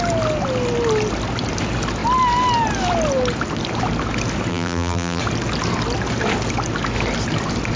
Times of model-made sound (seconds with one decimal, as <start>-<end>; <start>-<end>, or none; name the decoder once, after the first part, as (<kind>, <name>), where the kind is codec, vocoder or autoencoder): 4.5-5.2 (vocoder, BigVGAN v2)